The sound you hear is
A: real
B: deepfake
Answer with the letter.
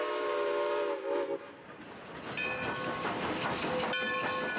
A